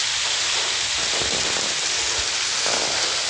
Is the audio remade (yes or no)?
no